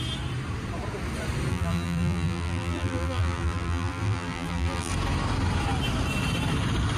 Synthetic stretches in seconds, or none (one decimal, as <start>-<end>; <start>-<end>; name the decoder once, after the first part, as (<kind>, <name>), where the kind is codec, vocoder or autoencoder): 1.5-4.9 (vocoder, BigVGAN v2)